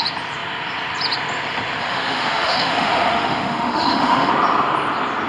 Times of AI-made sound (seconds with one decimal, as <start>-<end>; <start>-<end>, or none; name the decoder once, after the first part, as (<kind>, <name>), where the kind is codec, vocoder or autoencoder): 1.8-4.3 (autoencoder, DAC-VAE)